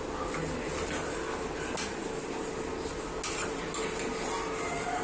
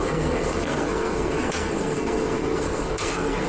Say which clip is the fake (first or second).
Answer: second